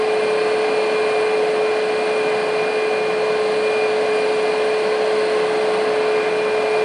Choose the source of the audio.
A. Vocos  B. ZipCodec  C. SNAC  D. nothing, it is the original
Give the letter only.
D